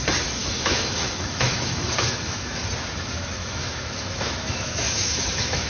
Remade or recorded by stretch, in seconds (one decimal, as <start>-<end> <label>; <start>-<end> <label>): 0.0-0.4 recorded; 0.4-2.6 remade; 2.6-3.4 recorded; 3.4-5.7 remade